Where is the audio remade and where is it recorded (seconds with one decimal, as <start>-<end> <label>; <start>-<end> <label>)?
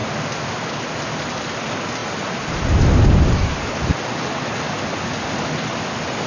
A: 0.0-0.9 remade; 0.9-6.3 recorded